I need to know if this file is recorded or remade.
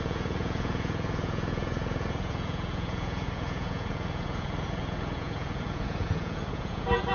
remade